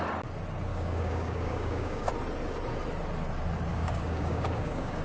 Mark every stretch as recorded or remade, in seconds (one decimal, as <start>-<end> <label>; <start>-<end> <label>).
0.0-0.7 recorded; 0.7-2.1 remade; 2.1-3.7 recorded; 3.7-5.0 remade